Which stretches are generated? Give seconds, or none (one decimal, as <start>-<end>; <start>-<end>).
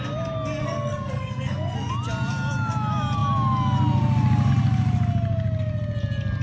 0.6-1.9